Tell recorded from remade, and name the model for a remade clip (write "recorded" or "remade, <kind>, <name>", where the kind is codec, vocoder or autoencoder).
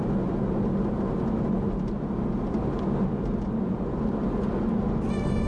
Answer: recorded